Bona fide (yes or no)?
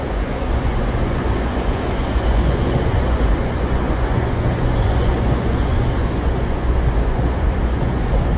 no